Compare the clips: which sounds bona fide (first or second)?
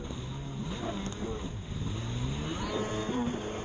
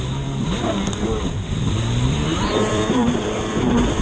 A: first